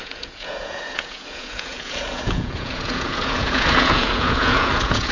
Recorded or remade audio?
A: remade